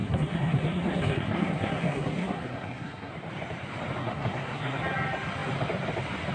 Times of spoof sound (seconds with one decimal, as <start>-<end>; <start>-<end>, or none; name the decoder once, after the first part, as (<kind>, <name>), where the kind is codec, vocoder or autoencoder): 0.0-3.1 (codec, SNAC); 4.0-4.8